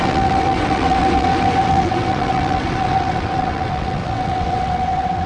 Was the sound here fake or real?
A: fake